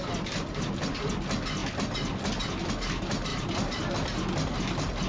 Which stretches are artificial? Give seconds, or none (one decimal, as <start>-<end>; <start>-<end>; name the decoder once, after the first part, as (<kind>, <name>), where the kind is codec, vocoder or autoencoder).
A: 3.3-3.9 (vocoder, BigVGAN v2)